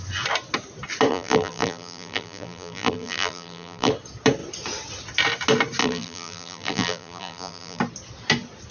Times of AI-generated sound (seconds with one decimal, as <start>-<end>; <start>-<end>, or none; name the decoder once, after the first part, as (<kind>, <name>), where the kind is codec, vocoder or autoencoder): 1.1-3.9 (vocoder, BigVGAN v2); 5.8-7.8